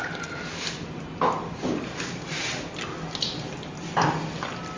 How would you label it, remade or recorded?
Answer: recorded